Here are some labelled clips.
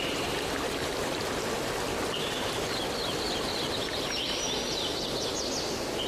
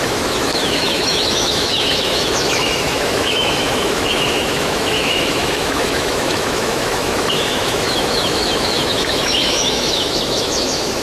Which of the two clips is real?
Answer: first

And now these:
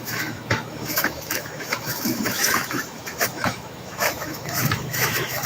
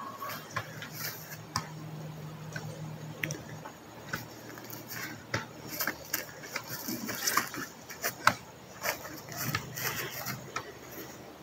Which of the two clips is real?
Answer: second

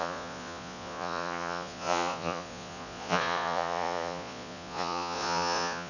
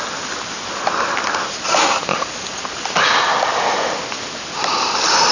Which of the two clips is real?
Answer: second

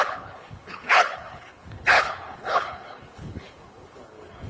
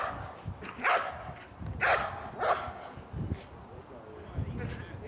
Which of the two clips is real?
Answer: second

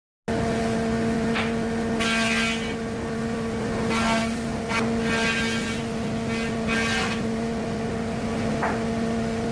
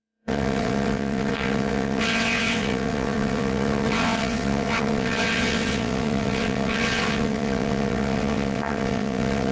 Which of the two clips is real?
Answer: first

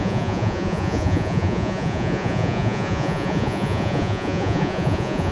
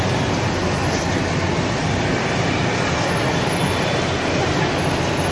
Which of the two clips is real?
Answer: second